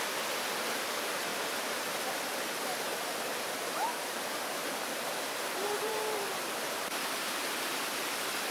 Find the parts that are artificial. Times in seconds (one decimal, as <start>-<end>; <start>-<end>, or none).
2.9-7.4

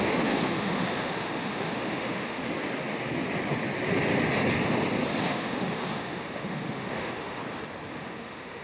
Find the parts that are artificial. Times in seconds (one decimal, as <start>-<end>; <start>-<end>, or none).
0.0-2.4; 5.2-7.4; 7.9-8.6

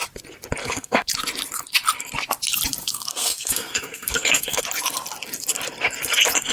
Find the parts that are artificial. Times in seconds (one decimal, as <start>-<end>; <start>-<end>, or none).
0.6-1.1; 2.8-4.6

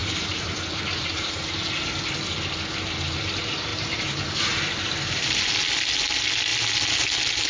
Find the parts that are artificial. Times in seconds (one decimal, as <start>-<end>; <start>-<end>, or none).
0.0-1.4; 3.7-5.5

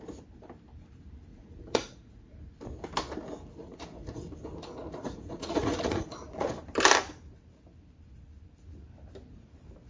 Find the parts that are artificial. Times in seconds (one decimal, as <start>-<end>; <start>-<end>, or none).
1.3-2.3; 3.6-4.2; 4.9-6.5

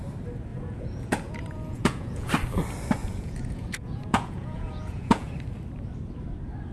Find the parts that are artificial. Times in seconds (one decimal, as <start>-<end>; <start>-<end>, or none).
0.5-2.3; 3.0-5.3

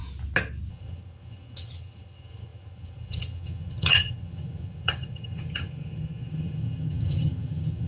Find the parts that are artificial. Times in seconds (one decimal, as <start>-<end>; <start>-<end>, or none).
0.7-7.9